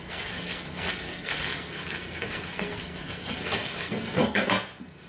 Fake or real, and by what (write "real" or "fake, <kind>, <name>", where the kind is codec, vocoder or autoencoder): fake, codec, SNAC